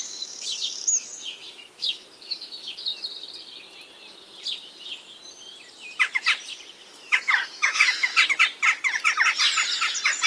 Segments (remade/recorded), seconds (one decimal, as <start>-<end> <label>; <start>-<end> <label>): 0.0-2.9 remade; 2.9-6.9 recorded; 6.9-8.1 remade; 8.1-10.3 recorded